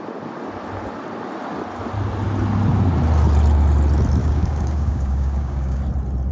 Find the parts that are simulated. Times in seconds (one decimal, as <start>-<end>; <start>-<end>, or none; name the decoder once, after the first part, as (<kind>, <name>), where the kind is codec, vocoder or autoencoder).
4.2-5.8 (codec, DAC)